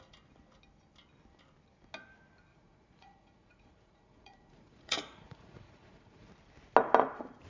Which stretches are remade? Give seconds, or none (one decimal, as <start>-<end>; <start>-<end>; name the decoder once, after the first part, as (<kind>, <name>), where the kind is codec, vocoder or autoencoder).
2.5-6.3 (vocoder, Vocos)